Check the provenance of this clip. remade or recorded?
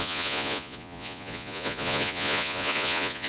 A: remade